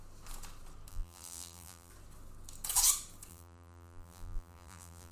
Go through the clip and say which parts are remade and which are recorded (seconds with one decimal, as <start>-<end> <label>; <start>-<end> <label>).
0.0-0.9 recorded; 0.9-1.9 remade; 1.9-3.3 recorded; 3.3-5.1 remade